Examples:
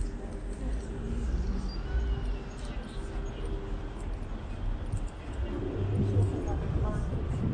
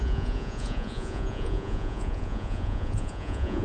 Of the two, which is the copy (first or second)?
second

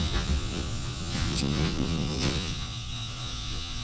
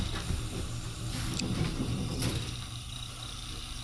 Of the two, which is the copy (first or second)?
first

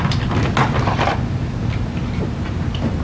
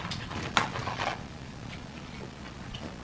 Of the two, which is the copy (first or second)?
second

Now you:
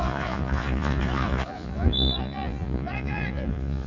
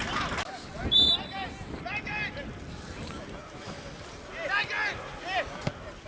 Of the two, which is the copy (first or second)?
first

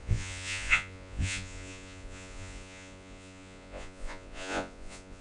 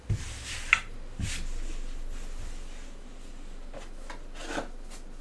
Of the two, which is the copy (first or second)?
first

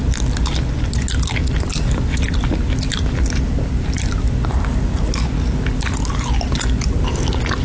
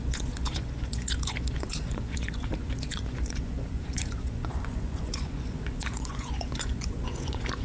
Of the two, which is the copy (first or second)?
second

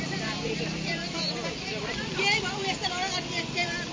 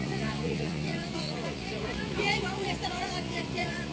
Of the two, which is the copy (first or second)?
second